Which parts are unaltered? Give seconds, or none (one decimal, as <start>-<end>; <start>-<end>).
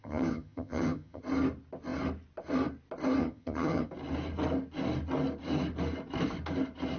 1.2-3.2; 3.9-7.0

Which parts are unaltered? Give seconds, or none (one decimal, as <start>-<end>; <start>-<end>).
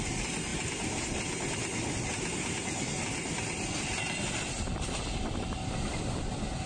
0.0-6.7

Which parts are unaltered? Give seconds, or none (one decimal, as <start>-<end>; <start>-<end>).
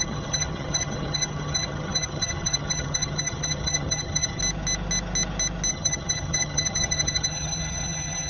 4.4-5.7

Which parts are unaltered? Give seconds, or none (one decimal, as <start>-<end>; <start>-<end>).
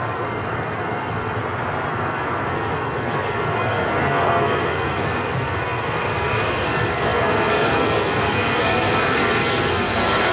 1.4-1.9